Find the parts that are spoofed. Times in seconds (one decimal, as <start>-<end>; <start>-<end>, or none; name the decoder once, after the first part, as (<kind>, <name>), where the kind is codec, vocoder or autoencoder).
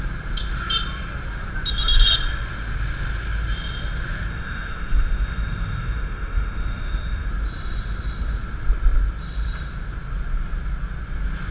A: 4.3-7.3 (autoencoder, DAC-VAE)